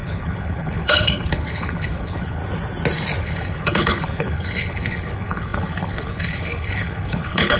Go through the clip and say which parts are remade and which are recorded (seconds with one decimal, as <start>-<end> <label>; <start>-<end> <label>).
0.0-2.4 remade; 2.4-3.2 recorded; 3.2-7.6 remade